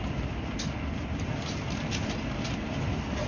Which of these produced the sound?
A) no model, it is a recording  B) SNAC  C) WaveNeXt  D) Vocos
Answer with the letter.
A